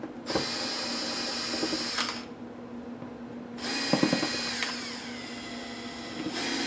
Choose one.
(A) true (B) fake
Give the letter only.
A